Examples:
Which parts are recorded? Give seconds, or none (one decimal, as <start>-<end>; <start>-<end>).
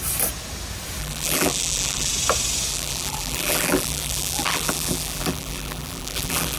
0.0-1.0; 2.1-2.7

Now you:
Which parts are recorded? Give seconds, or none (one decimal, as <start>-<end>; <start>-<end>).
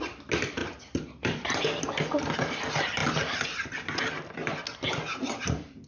0.0-5.9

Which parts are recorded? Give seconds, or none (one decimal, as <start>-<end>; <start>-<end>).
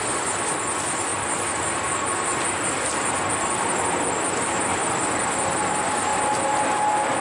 1.1-3.7; 4.8-5.6; 6.1-7.2